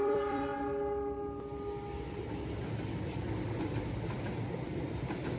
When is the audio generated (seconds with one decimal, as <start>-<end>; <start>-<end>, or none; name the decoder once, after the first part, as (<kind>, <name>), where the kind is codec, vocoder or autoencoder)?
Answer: 0.0-0.5 (vocoder, BigVGAN v2); 3.6-5.4